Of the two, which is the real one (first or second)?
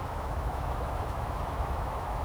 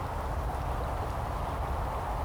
second